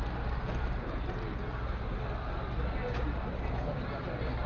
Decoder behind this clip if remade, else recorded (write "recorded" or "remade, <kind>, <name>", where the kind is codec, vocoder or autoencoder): recorded